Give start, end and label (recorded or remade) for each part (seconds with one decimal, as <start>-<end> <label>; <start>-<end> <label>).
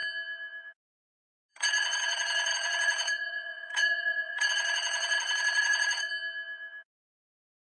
0.0-1.5 recorded; 1.5-6.1 remade; 6.1-7.6 recorded